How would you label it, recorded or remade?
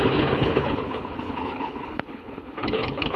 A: remade